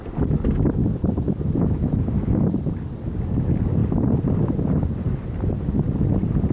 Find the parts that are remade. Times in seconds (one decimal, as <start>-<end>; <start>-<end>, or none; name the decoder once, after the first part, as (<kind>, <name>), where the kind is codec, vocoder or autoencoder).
none